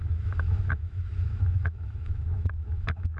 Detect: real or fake fake